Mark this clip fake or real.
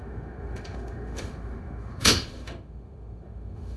fake